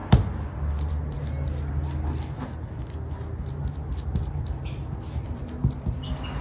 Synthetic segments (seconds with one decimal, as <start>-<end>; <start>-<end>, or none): none